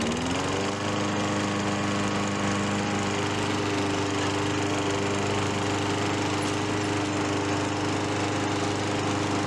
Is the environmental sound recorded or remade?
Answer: recorded